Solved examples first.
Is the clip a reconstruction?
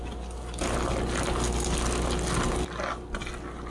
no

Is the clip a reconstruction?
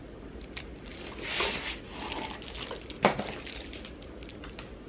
no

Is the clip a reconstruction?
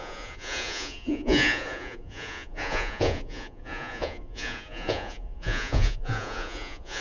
yes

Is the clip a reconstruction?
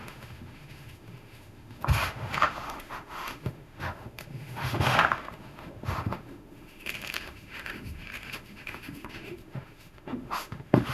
yes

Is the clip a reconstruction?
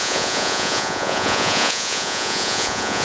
yes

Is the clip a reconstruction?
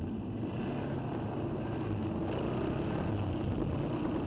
no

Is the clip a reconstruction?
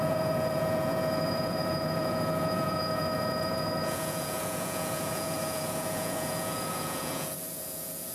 yes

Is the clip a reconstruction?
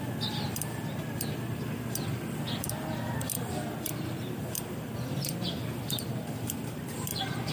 yes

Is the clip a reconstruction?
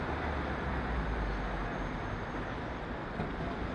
no